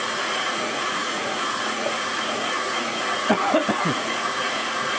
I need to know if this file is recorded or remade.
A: remade